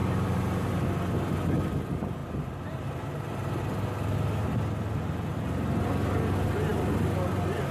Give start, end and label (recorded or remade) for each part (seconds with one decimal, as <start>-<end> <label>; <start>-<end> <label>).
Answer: 0.0-0.9 remade; 0.9-2.2 recorded; 2.2-3.6 remade; 3.6-7.7 recorded